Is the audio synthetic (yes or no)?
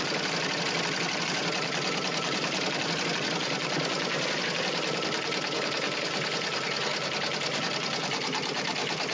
no